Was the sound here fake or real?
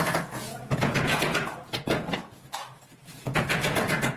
fake